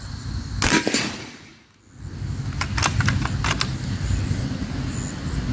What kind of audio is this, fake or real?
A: real